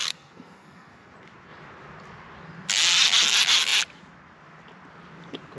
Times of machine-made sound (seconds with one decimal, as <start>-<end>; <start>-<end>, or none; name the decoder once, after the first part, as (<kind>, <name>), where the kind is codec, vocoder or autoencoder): 0.0-1.1 (codec, SNAC)